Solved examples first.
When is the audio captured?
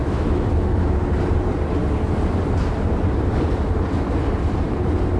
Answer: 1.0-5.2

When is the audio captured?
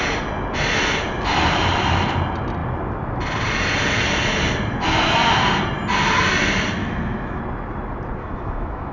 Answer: 0.0-6.8; 7.4-8.2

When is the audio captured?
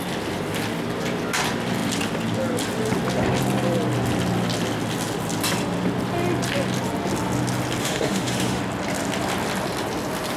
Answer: 0.0-7.8; 8.6-10.4